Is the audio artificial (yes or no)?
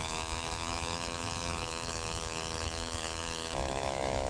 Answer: yes